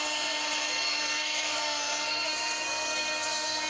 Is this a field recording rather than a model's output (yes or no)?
no